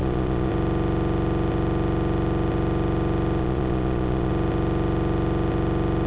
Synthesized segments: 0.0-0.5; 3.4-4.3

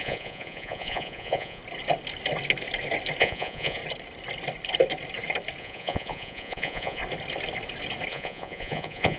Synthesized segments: 0.0-1.6; 3.2-3.8; 5.6-7.0; 8.1-9.2

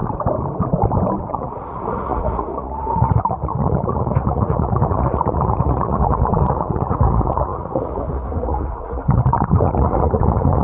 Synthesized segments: 1.2-10.6

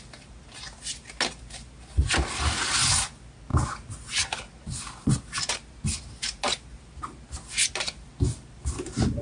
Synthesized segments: none

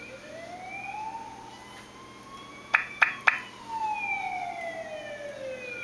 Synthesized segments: 2.5-3.2

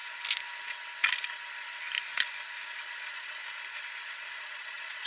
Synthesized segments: 2.8-3.4; 4.4-5.1

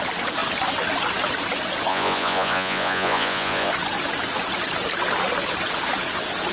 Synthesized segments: 1.9-3.7

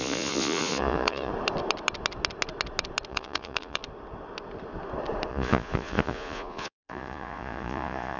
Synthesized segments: 0.0-1.3; 3.1-3.8; 5.3-8.2